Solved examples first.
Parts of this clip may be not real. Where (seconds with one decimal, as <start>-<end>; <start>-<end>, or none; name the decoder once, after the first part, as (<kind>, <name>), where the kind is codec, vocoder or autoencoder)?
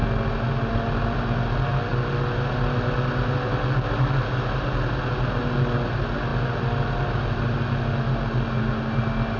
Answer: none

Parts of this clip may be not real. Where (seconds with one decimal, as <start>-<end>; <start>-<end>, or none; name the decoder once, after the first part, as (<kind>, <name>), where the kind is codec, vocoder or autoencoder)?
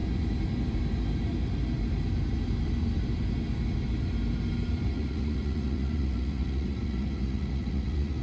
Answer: 4.9-8.2 (vocoder, Vocos)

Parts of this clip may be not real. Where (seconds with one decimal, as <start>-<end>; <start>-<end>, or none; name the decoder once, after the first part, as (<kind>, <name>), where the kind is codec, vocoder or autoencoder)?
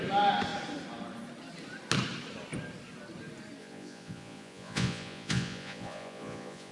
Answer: 3.6-6.7 (vocoder, Vocos)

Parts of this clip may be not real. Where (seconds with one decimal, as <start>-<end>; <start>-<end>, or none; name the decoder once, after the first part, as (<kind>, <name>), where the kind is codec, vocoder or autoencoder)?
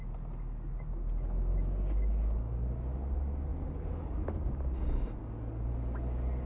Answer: none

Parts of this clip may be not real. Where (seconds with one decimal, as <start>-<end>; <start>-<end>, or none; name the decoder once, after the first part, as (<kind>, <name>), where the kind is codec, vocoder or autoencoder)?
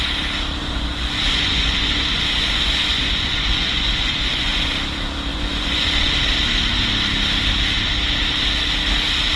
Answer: 0.6-4.7 (vocoder, Vocos); 5.3-6.1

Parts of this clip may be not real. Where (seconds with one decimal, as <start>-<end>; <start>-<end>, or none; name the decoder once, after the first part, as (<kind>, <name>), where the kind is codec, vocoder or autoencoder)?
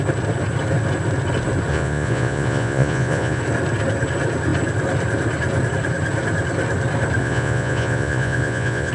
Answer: 1.7-3.4 (vocoder, Vocos); 7.2-8.9